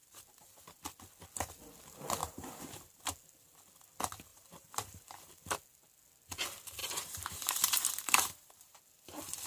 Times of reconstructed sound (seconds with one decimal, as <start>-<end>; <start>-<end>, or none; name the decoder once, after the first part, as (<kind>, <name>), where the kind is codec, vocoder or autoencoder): 0.0-0.8 (vocoder, BigVGAN v2); 2.2-3.0; 4.3-5.3; 6.8-8.8